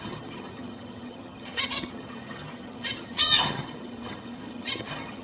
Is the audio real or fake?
fake